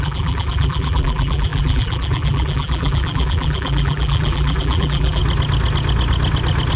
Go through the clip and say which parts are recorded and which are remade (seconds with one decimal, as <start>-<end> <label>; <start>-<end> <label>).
0.0-5.2 remade; 5.2-6.8 recorded